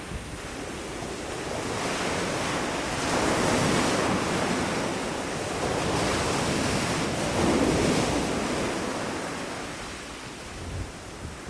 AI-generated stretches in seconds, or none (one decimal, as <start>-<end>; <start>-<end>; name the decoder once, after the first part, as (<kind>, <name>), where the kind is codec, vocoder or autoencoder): none